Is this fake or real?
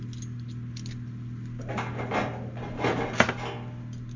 real